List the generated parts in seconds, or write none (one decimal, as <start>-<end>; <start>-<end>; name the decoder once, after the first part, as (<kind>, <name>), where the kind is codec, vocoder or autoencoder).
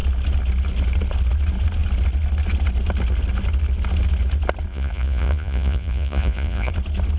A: 4.7-6.7 (vocoder, Vocos)